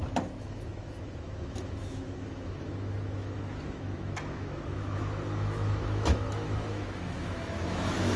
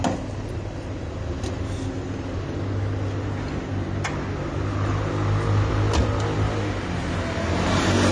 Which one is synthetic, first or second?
first